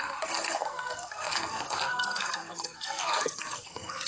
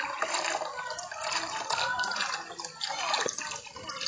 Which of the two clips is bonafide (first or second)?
second